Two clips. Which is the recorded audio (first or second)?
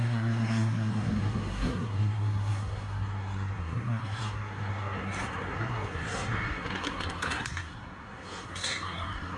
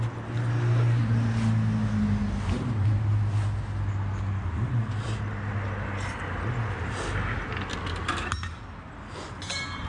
second